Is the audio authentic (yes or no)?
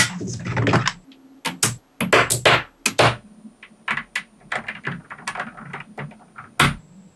yes